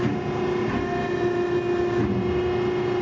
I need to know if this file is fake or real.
real